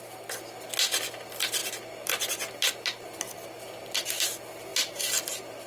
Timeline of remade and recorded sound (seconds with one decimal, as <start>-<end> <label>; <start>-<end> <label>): 0.0-5.7 recorded